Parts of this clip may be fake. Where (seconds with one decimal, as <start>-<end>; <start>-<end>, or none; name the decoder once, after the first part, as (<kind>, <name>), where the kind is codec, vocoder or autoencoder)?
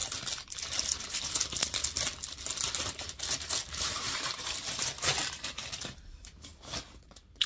1.0-1.8 (vocoder, BigVGAN v2); 2.7-7.5